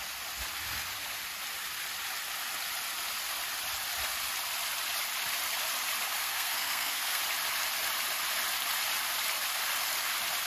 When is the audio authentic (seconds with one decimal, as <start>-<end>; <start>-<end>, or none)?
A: 0.0-6.2; 7.2-10.5